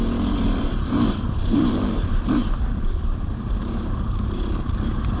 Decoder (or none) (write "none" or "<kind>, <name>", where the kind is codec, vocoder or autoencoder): vocoder, BigVGAN v2